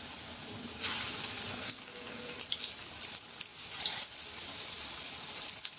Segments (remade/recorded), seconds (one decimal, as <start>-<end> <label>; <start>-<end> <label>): 0.0-1.5 recorded; 1.5-2.4 remade; 2.4-5.8 recorded